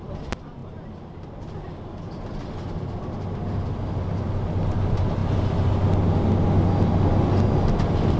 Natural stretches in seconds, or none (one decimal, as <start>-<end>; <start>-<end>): 0.0-8.2